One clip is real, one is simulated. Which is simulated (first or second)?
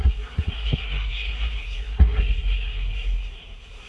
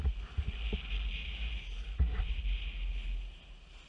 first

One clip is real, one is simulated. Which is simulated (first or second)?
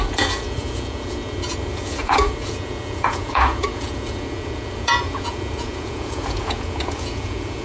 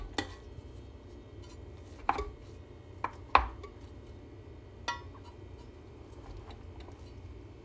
first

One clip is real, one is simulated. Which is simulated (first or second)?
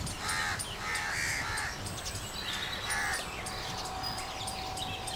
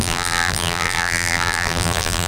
second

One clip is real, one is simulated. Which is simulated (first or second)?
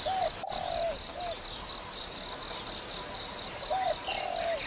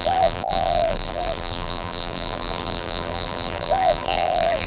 second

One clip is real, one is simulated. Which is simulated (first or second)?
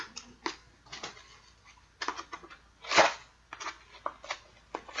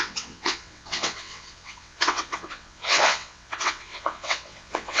second